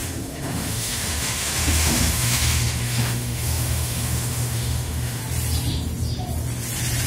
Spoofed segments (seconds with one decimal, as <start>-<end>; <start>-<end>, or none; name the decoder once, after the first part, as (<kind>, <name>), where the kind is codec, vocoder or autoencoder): 0.0-5.2 (autoencoder, DAC-VAE)